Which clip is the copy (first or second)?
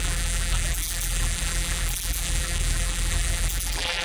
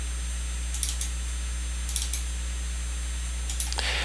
first